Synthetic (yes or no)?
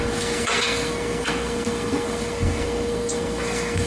yes